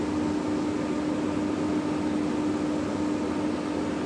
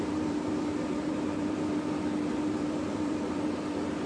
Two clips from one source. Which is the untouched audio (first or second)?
first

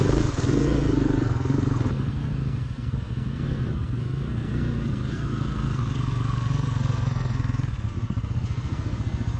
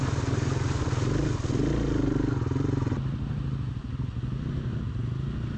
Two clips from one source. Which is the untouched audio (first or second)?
second